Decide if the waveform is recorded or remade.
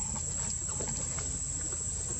recorded